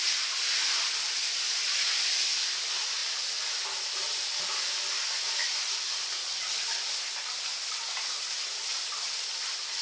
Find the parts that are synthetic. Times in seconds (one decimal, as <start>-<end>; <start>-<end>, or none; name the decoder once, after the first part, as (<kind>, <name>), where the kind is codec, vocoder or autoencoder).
none